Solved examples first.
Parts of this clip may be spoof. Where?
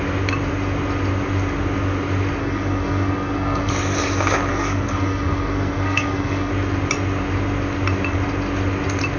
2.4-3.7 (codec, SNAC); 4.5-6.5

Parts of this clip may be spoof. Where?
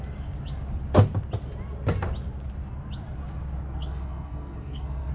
3.7-5.1 (codec, SNAC)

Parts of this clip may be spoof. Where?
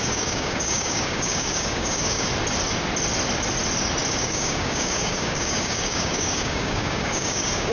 0.0-2.3 (codec, DAC); 4.1-7.7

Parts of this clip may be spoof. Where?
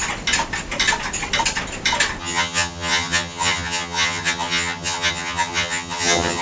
2.2-6.4 (vocoder, HiFi-GAN)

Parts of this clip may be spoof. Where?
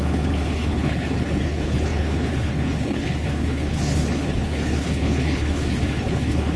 0.0-6.6 (codec, HILCodec)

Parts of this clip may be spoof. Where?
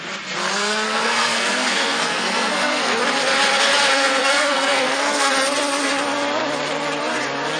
0.5-3.0 (codec, SNAC); 3.9-5.3